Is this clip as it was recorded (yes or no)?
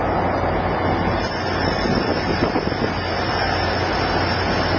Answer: yes